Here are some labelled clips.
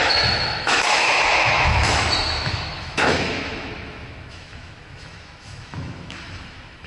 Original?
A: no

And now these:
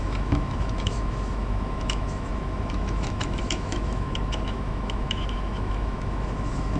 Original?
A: no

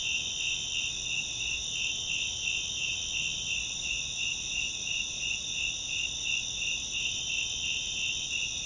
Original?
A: yes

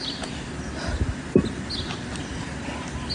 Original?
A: yes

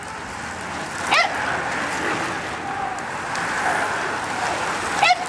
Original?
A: yes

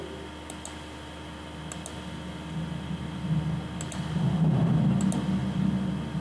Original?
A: yes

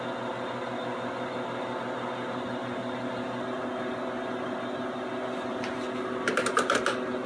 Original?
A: yes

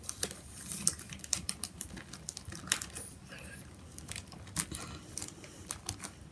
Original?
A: yes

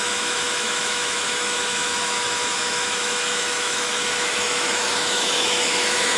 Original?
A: no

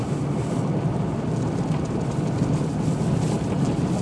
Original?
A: yes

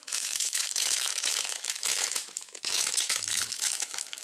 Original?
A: no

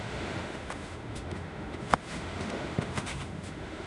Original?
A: no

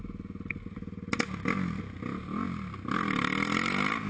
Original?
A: yes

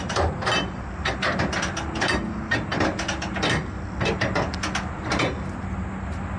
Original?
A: yes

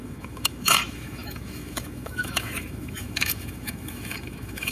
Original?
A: no